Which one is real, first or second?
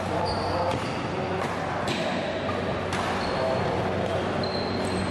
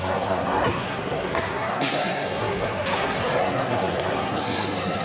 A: first